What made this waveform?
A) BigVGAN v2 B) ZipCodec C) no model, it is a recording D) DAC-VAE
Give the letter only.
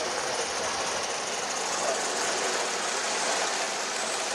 C